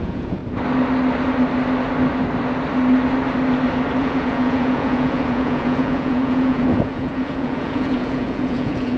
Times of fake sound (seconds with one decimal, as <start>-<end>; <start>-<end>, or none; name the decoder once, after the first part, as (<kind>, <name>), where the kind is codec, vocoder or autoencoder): 0.0-0.4 (vocoder, Vocos); 4.0-9.0